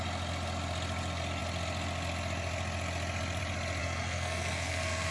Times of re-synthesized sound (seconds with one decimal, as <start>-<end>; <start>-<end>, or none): 3.8-5.1

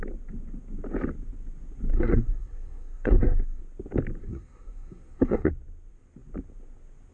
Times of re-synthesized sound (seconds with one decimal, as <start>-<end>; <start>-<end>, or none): 1.9-3.6; 4.2-5.5

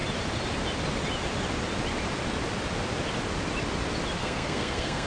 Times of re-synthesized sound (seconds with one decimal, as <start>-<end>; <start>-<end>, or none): 4.2-5.1

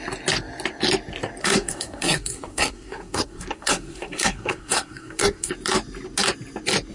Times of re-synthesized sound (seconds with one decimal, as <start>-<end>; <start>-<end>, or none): 1.4-5.5

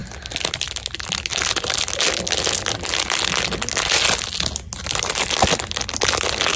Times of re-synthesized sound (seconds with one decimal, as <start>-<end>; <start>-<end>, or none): none

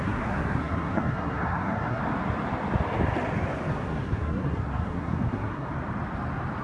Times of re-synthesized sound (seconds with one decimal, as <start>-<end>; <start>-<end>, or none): 0.0-2.0; 3.7-5.7

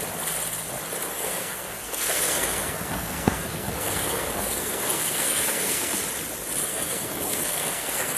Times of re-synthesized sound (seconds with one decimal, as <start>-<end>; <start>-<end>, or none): 1.1-6.0; 6.7-8.2

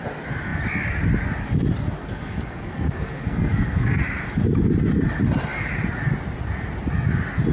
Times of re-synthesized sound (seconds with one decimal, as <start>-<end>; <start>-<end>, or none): 2.0-4.0